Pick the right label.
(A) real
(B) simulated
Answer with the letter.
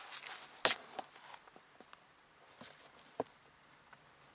A